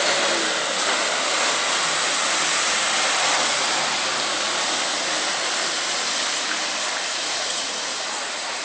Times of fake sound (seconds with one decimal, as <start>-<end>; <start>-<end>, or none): 7.1-8.6